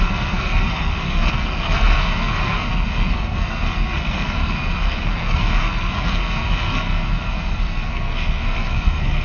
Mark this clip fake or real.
fake